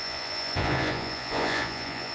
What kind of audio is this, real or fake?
fake